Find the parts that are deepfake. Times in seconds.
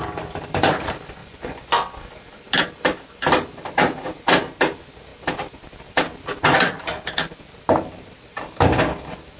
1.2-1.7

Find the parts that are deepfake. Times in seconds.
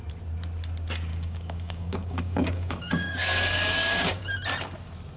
1.1-4.2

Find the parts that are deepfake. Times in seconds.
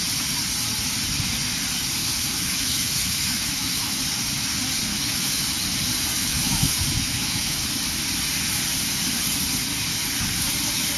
2.0-4.0; 4.9-5.4; 6.2-7.6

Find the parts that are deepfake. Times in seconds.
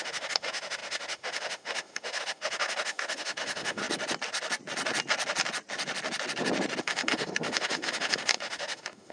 0.0-3.8; 6.8-9.1